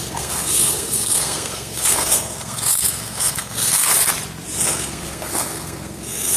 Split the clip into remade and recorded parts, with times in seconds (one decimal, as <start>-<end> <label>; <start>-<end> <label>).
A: 0.0-3.9 remade; 3.9-4.6 recorded; 4.6-6.4 remade